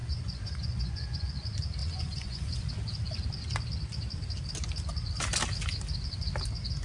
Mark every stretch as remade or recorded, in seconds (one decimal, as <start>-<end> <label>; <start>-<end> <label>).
0.0-1.3 remade; 1.3-1.8 recorded; 1.8-2.7 remade; 2.7-6.8 recorded